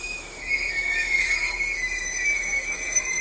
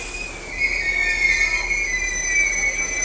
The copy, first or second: first